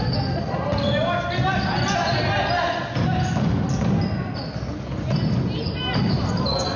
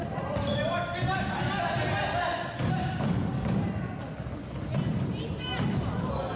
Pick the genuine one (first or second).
first